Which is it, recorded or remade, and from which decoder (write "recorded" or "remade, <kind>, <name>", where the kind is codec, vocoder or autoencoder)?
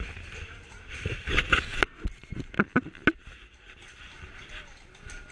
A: recorded